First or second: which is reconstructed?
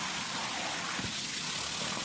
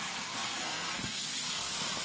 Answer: second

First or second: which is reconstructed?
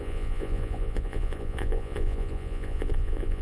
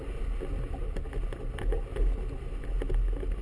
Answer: first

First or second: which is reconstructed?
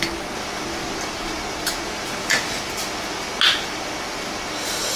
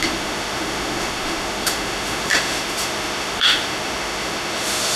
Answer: second